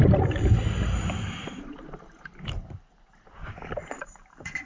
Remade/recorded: recorded